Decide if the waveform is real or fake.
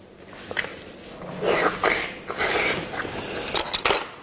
real